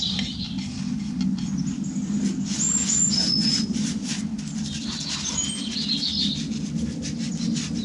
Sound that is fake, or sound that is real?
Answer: real